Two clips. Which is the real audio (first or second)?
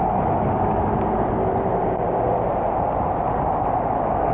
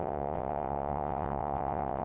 first